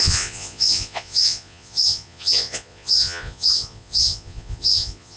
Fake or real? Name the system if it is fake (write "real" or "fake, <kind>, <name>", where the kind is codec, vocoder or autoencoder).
fake, vocoder, Vocos